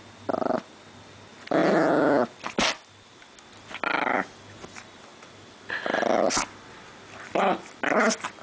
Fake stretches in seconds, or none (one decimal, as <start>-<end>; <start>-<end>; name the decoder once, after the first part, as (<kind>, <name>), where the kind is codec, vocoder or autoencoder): none